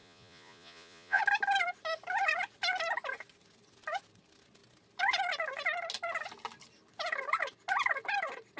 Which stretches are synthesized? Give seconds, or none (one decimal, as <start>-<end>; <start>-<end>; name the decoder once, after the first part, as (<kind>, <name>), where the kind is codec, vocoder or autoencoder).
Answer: 0.0-1.2 (vocoder, Vocos)